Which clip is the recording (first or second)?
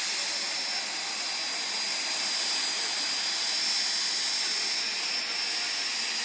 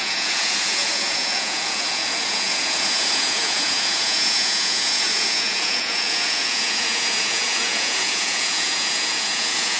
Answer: first